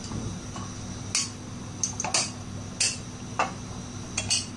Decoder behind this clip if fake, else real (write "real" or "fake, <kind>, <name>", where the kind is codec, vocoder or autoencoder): real